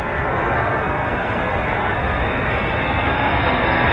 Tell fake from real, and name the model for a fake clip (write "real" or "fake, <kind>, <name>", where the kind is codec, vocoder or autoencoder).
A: fake, codec, SNAC